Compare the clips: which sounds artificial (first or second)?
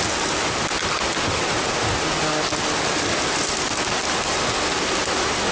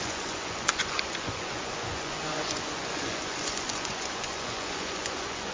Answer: second